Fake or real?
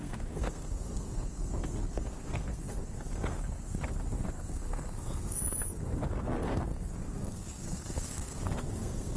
fake